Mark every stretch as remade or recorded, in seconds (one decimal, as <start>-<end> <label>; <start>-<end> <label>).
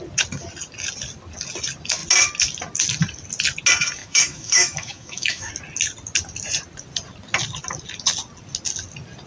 0.0-4.0 recorded; 4.0-5.5 remade; 5.5-9.3 recorded